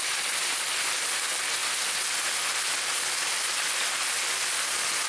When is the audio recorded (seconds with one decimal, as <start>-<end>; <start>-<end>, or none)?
0.0-5.1